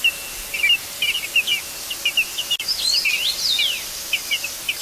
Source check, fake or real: real